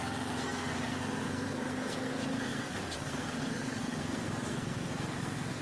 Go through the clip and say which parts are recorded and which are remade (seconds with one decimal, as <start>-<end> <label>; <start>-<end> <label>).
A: 0.0-5.6 remade